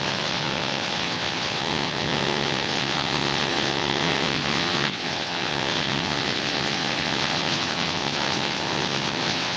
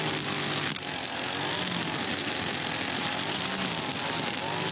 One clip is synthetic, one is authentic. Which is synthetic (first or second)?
first